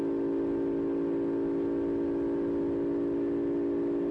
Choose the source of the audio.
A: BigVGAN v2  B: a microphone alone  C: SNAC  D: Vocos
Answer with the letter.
B